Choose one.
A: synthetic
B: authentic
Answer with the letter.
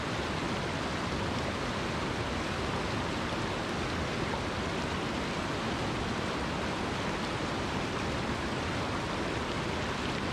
B